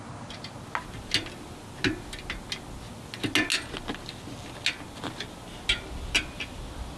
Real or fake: real